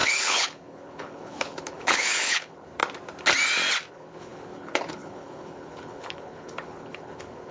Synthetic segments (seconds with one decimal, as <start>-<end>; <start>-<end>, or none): 0.0-2.8; 3.9-7.5